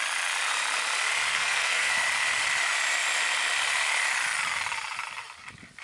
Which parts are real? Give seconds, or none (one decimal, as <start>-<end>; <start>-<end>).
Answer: 0.0-1.3; 1.9-5.8